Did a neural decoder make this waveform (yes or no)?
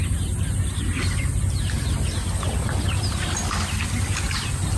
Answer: no